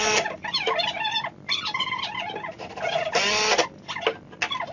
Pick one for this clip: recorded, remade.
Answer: recorded